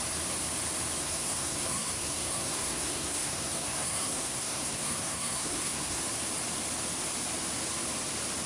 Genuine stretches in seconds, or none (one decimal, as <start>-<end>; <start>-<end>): 0.0-1.0; 6.0-8.5